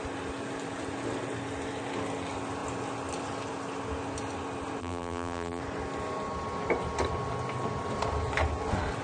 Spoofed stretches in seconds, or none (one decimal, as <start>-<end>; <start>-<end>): 4.8-5.6